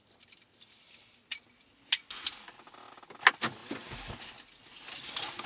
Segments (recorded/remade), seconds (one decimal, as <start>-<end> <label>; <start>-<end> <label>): 0.0-5.5 recorded